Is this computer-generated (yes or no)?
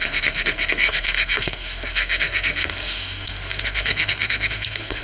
yes